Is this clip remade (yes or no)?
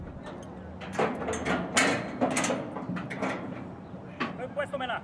no